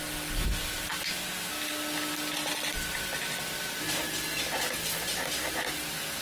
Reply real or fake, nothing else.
real